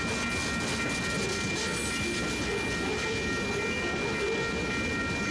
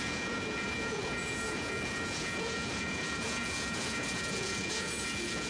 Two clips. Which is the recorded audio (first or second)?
first